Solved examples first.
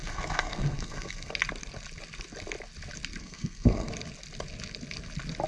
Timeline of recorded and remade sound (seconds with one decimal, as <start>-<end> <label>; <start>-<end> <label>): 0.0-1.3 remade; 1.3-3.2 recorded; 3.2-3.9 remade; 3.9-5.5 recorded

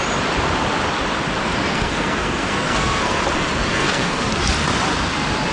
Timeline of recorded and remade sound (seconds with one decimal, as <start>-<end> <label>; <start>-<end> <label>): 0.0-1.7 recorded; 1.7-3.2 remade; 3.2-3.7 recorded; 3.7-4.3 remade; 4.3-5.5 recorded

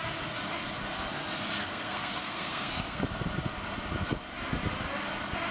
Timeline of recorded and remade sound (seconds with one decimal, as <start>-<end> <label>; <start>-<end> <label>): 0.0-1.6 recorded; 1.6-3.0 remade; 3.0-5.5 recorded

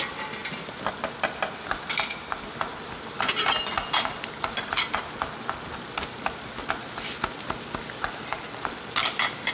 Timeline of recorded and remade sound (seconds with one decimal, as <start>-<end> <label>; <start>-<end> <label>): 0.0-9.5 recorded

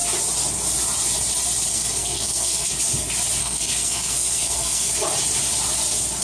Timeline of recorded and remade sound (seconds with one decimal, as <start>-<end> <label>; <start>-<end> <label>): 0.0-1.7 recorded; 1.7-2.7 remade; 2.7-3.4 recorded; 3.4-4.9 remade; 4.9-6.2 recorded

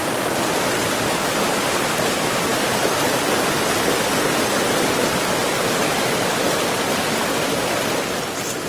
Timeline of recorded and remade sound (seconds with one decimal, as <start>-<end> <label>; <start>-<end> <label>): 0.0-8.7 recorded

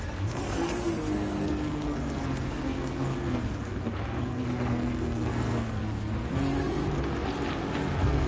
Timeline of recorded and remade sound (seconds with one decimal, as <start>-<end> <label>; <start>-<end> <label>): 0.0-6.8 remade; 6.8-7.7 recorded; 7.7-8.3 remade